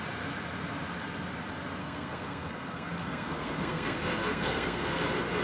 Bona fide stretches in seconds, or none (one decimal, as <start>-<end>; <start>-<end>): 0.0-1.8; 5.0-5.4